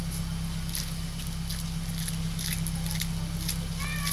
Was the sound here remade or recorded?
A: recorded